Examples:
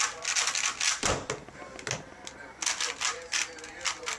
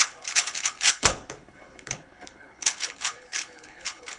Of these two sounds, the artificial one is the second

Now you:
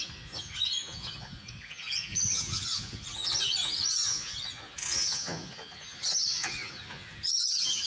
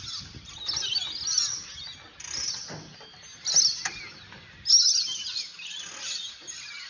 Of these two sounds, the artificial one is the first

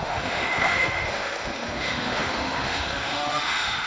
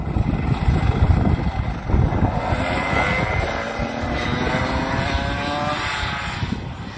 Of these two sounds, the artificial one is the first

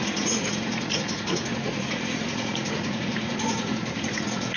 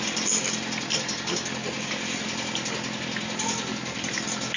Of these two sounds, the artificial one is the first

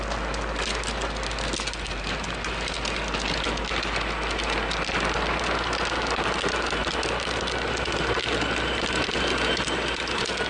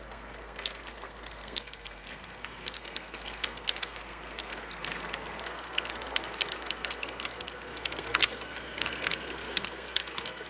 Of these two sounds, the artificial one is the second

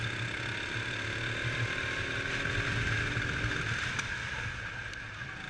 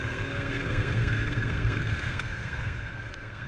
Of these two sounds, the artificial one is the second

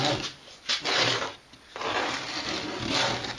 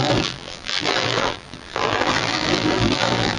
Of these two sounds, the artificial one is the second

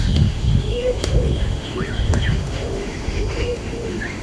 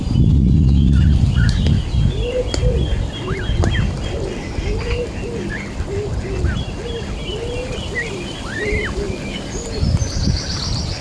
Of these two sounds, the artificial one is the first